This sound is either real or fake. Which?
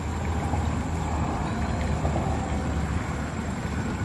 real